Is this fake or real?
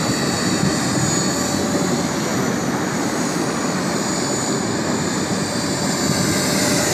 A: real